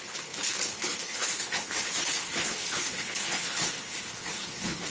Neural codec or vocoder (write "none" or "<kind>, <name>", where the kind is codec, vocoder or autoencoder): codec, HILCodec